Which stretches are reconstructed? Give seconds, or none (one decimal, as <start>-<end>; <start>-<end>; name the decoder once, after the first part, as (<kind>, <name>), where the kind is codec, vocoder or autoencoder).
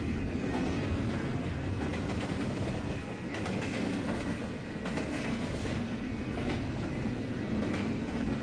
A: 0.0-8.4 (codec, SNAC)